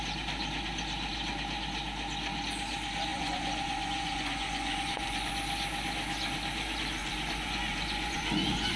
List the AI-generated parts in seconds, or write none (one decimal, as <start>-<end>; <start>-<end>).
3.1-5.3; 7.0-8.8